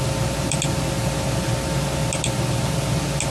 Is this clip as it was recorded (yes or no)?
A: yes